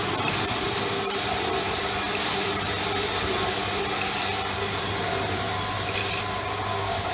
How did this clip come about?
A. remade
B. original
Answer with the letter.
B